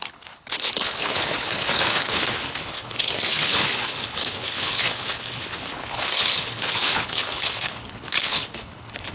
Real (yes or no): no